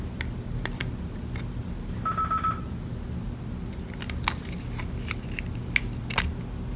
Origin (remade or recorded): recorded